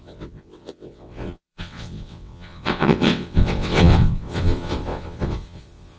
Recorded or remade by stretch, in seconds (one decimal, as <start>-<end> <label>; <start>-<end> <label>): 0.0-6.0 remade